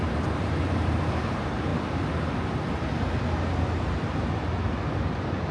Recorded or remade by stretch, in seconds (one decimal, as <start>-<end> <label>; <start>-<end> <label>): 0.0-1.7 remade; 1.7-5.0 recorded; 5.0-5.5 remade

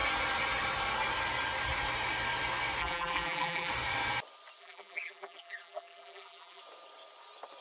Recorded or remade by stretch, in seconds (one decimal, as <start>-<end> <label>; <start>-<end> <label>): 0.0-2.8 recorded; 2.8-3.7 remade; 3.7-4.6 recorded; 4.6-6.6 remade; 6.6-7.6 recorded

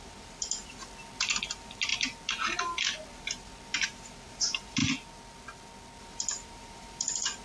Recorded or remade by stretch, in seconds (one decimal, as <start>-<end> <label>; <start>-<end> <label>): 0.0-0.8 remade; 0.8-1.4 recorded; 1.4-1.9 remade; 1.9-3.2 recorded; 3.2-4.8 remade; 4.8-6.0 recorded; 6.0-7.4 remade